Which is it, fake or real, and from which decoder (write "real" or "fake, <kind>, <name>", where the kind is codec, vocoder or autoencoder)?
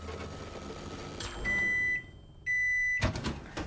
real